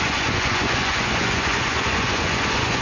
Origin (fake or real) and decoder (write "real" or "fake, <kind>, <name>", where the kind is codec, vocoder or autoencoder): fake, vocoder, Vocos